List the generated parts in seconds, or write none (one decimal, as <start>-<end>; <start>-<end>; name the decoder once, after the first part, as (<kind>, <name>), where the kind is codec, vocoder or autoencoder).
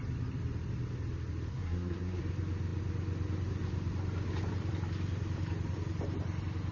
1.5-2.2 (codec, SNAC)